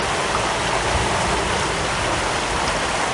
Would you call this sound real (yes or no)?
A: yes